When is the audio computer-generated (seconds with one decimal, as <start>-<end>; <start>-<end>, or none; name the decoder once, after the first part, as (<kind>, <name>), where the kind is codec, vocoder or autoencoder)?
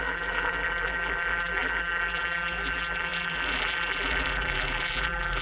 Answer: 0.0-5.4 (vocoder, BigVGAN v2)